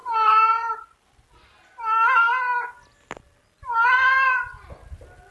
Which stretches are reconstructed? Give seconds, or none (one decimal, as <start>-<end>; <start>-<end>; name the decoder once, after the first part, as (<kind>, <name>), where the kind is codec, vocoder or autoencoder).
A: none